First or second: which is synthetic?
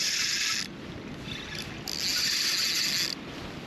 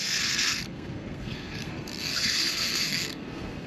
second